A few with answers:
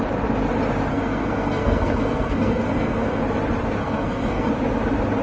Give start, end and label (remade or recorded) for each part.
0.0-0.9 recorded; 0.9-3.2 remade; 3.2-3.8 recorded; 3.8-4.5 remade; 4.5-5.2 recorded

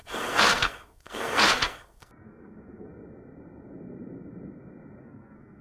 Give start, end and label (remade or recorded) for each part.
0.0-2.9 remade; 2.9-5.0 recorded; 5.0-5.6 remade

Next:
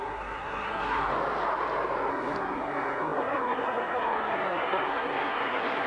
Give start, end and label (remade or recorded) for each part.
0.0-1.1 remade; 1.1-2.1 recorded; 2.1-5.9 remade

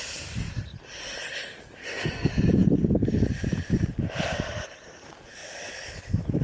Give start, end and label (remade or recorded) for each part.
0.0-1.8 recorded; 1.8-2.3 remade; 2.3-6.4 recorded

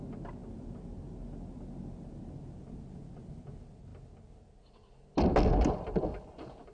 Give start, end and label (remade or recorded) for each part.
0.0-6.7 recorded

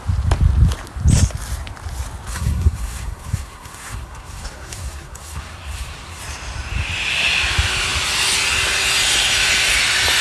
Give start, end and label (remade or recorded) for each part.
0.0-2.3 recorded; 2.3-6.2 remade; 6.2-10.2 recorded